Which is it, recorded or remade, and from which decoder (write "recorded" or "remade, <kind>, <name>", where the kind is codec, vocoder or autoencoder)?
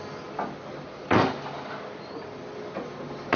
recorded